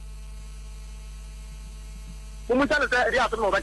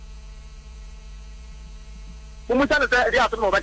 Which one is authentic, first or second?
first